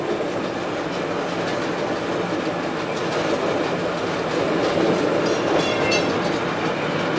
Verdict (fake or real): real